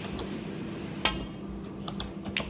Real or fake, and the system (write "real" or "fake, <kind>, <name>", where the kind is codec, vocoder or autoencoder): real